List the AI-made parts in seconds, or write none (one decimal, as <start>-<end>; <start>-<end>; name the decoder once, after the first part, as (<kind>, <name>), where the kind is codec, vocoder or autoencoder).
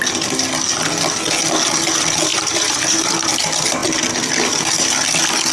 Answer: 2.3-3.1 (vocoder, BigVGAN v2)